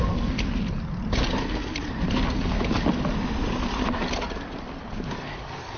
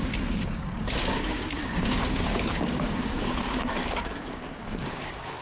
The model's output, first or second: second